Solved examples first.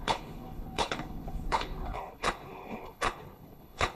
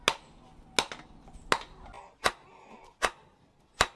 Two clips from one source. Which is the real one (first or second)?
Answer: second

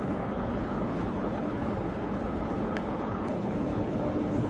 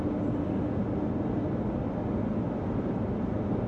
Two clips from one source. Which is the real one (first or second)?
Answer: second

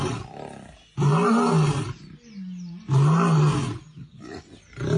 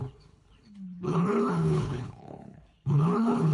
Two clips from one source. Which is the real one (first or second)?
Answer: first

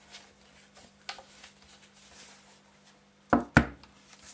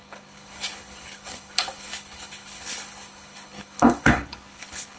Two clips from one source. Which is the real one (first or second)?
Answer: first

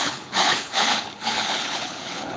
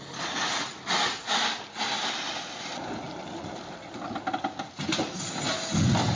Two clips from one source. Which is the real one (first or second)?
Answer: second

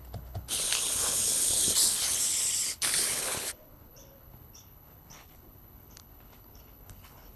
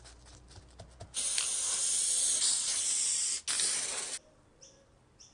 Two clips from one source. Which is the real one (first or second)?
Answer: second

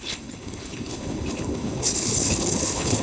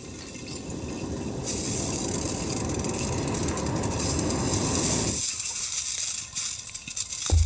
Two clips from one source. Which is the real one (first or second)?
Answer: second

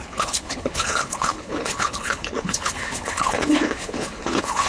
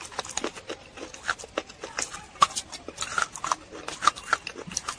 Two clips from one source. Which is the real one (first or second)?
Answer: second